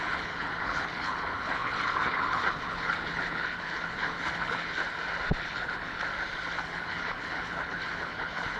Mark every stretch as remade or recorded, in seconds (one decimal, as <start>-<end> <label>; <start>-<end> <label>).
0.0-4.8 remade; 4.8-5.4 recorded; 5.4-6.0 remade; 6.0-6.5 recorded; 6.5-8.6 remade